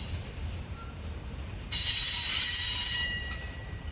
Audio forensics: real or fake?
fake